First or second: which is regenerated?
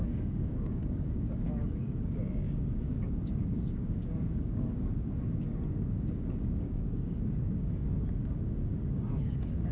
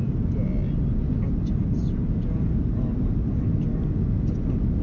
first